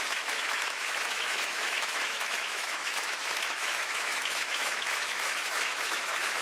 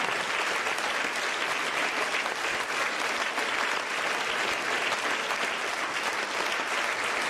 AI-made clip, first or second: first